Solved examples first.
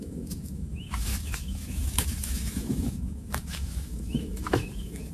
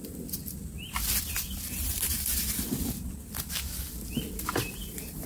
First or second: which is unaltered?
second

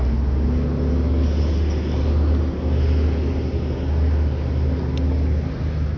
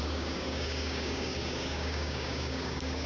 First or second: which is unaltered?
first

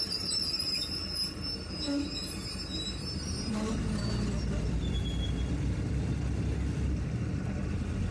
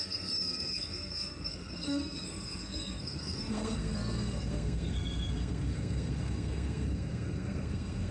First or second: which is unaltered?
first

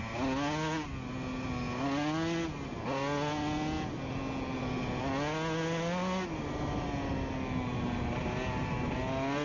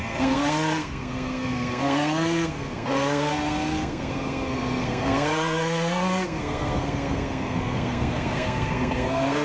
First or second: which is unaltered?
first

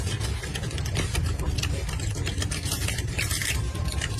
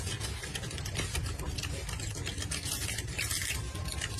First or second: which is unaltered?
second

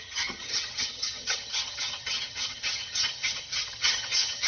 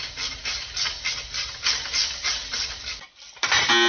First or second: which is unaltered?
second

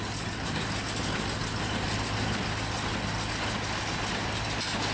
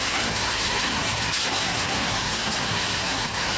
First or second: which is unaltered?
first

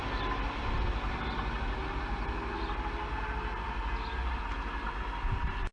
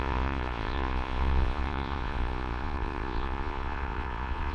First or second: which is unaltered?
first